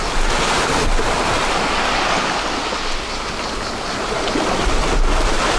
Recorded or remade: recorded